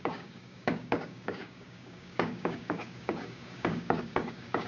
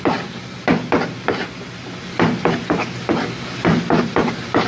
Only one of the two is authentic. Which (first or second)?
second